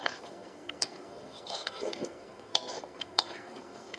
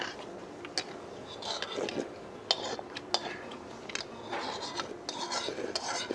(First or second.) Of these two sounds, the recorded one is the second